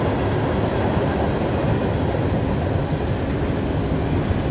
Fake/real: real